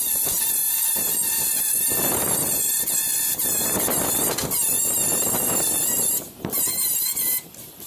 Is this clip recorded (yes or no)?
yes